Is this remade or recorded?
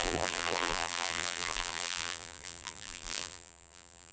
remade